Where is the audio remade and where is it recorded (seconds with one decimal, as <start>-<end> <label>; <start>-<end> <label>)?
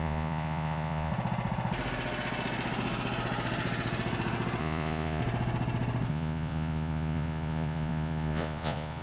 0.0-1.1 remade; 1.1-4.6 recorded; 4.6-5.2 remade; 5.2-6.1 recorded; 6.1-9.0 remade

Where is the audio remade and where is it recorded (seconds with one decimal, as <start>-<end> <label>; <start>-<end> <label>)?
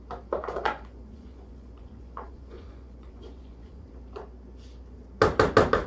0.0-0.4 recorded; 0.4-3.9 remade; 3.9-5.9 recorded